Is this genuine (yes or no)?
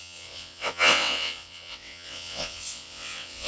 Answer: no